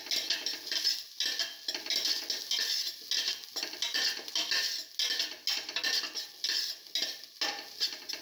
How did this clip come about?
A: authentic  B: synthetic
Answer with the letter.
A